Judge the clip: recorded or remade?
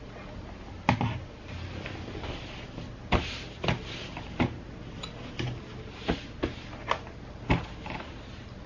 recorded